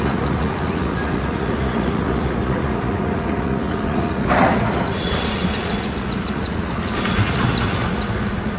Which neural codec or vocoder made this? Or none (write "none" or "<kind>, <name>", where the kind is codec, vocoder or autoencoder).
vocoder, Vocos